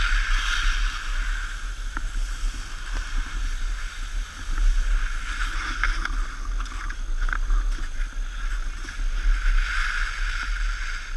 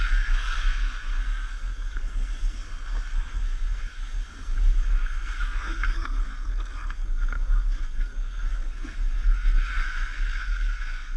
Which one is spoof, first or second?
second